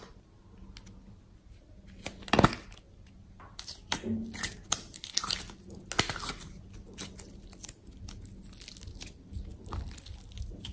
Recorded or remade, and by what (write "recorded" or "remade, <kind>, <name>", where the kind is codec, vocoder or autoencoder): recorded